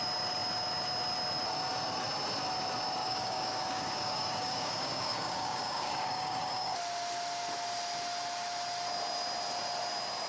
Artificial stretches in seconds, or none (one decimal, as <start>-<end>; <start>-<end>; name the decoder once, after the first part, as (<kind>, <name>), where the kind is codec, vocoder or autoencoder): 3.0-6.8 (codec, DAC)

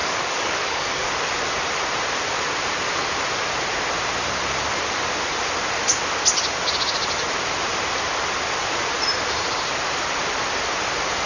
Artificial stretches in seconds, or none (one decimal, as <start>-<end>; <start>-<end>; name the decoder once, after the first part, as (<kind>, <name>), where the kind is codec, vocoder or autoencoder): 0.0-1.1 (codec, DAC)

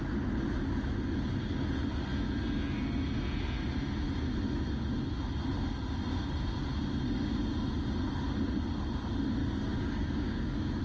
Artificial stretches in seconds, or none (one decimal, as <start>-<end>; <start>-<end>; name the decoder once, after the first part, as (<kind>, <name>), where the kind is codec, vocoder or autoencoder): 9.4-10.8 (codec, DAC)

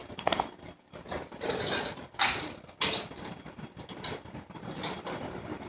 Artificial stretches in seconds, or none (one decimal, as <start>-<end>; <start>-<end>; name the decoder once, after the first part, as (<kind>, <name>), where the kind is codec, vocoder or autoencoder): none

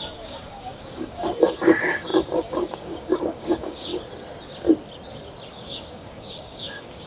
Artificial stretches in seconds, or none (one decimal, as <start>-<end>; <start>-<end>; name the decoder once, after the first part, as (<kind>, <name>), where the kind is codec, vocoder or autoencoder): 0.0-3.9 (codec, DAC); 5.5-7.1

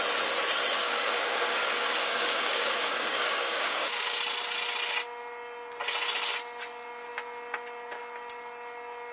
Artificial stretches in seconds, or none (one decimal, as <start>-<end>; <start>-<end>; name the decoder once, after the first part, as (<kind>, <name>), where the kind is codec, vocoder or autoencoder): 0.8-4.2 (codec, DAC)